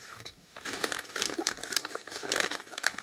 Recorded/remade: remade